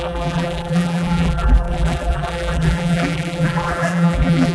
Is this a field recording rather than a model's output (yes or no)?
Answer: no